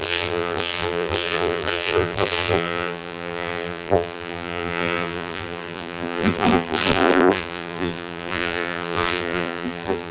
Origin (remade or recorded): remade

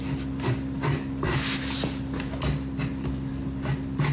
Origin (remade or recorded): recorded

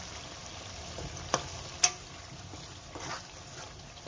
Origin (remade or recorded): recorded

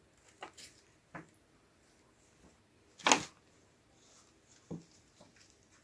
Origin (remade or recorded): recorded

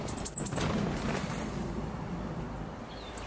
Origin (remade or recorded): recorded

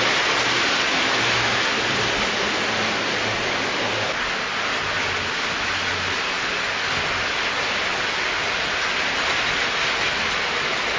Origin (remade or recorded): recorded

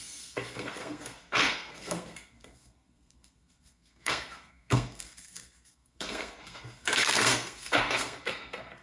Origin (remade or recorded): remade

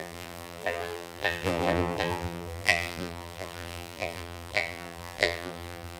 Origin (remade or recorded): remade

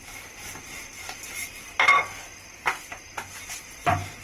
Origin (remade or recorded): recorded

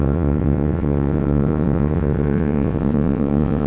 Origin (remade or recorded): remade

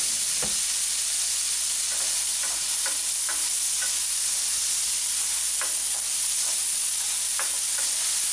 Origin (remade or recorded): recorded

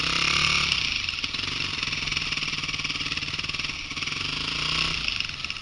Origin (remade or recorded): recorded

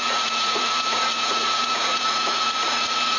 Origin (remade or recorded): remade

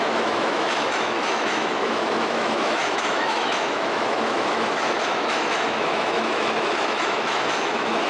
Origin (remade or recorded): remade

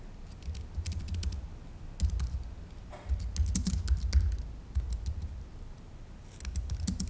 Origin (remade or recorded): recorded